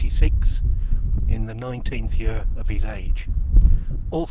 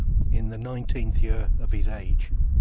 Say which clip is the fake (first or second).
first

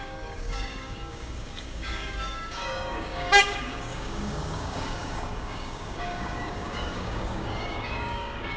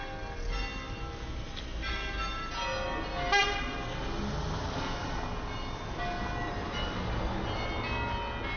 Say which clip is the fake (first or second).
first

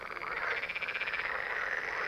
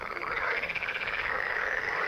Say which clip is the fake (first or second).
second